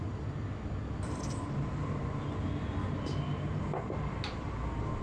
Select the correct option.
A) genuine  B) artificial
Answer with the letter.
A